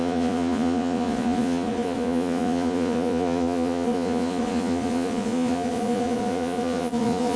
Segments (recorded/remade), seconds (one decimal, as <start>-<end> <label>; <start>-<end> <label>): 0.0-7.4 remade